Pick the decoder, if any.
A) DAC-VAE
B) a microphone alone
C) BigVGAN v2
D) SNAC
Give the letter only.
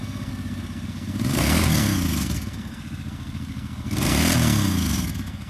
D